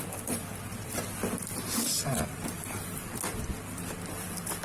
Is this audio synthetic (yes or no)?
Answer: yes